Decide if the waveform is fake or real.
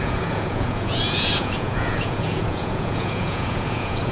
fake